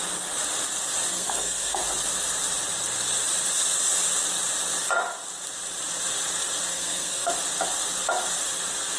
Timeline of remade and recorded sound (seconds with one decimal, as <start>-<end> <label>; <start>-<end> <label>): 0.0-1.1 recorded; 1.1-1.8 remade; 1.8-6.7 recorded; 6.7-7.3 remade; 7.3-9.0 recorded